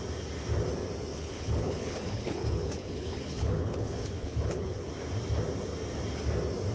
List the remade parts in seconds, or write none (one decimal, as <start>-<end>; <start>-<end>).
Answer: 1.1-4.9